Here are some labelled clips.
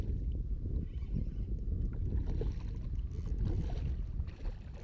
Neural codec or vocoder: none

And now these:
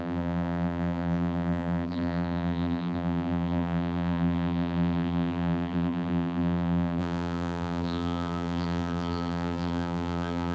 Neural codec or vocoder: vocoder, BigVGAN v2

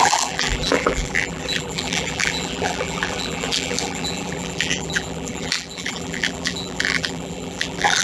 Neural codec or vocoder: vocoder, BigVGAN v2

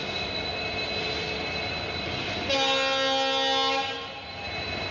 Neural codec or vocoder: none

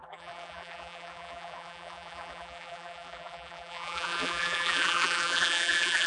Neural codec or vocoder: vocoder, BigVGAN v2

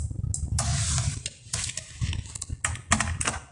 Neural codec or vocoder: none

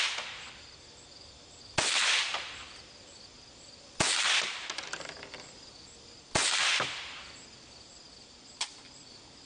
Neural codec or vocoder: none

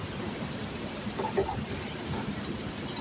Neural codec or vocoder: vocoder, BigVGAN v2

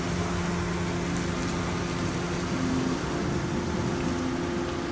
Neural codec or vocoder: none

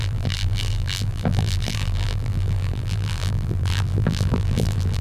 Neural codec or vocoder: vocoder, BigVGAN v2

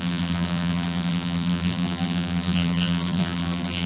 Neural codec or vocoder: vocoder, BigVGAN v2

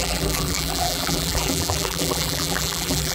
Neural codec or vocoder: vocoder, BigVGAN v2